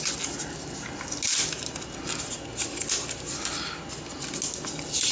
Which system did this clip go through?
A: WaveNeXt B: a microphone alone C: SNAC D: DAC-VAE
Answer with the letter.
B